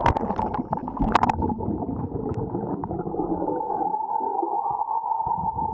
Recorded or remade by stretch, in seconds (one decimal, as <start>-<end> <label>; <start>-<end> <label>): 0.0-0.8 recorded; 0.8-3.9 remade; 3.9-4.3 recorded; 4.3-4.8 remade; 4.8-5.7 recorded

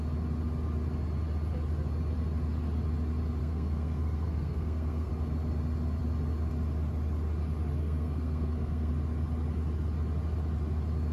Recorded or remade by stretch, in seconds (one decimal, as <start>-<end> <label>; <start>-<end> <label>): 0.0-3.4 recorded; 3.4-5.1 remade; 5.1-7.8 recorded; 7.8-8.9 remade; 8.9-11.1 recorded

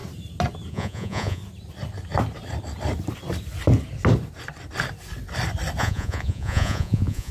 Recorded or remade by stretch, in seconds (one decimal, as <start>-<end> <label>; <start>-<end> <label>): 0.0-0.7 recorded; 0.7-1.4 remade; 1.4-5.8 recorded; 5.8-7.3 remade

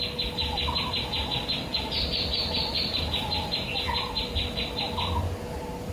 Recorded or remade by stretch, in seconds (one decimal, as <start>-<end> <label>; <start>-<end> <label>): 0.0-1.7 recorded; 1.7-4.1 remade; 4.1-5.9 recorded

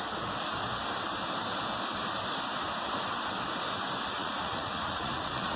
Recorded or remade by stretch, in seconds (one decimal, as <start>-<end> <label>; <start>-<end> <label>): 0.0-4.1 recorded; 4.1-5.6 remade

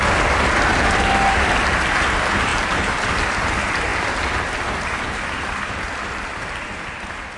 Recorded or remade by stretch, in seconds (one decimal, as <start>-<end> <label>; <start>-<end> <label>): 0.0-7.4 recorded